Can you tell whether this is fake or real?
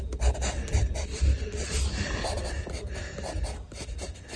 real